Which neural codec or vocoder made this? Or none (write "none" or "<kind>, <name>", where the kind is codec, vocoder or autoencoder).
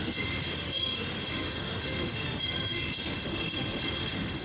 autoencoder, DAC-VAE